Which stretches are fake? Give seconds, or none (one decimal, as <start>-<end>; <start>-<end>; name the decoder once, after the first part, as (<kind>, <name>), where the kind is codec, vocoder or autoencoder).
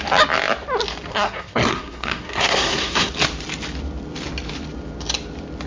1.1-3.1 (codec, SNAC)